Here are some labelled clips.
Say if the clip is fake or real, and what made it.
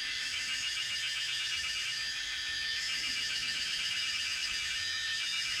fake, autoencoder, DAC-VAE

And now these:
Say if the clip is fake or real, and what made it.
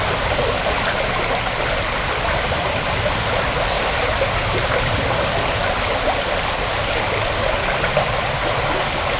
real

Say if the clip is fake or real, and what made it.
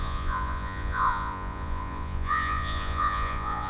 fake, vocoder, Vocos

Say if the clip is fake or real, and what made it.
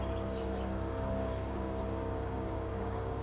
fake, codec, DAC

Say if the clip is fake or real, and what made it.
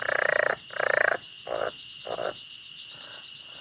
real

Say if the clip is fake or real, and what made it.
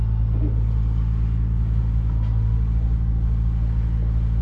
real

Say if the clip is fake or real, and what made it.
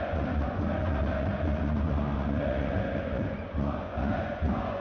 fake, vocoder, Vocos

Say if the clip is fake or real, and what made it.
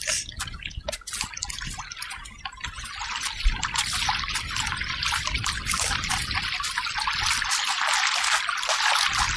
real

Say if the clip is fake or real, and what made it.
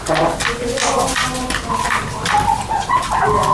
real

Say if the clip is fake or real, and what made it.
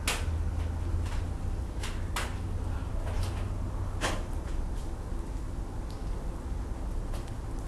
real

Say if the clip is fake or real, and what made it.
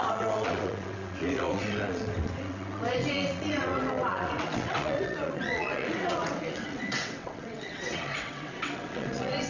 fake, vocoder, WaveNeXt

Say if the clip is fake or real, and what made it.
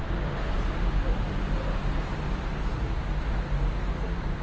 real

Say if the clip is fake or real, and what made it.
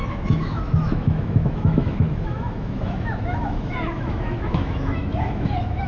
fake, autoencoder, DAC-VAE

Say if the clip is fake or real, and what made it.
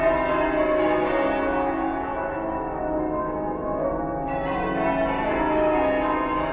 real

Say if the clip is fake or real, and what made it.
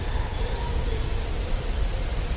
fake, vocoder, BigVGAN v2